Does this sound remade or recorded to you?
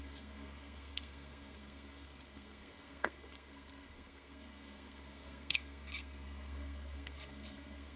remade